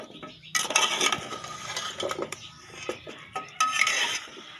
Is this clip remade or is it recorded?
recorded